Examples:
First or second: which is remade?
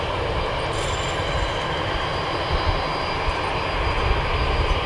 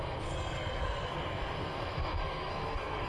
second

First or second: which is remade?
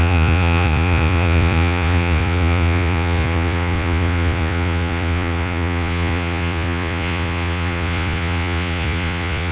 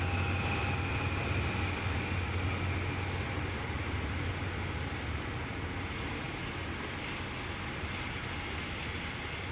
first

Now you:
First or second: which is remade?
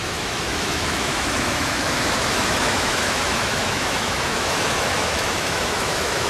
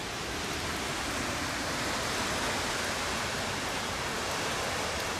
first